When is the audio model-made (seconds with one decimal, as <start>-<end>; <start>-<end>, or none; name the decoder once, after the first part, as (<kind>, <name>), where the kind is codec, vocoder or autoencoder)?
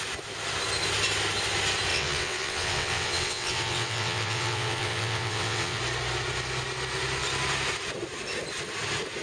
1.9-5.8 (vocoder, WaveNeXt)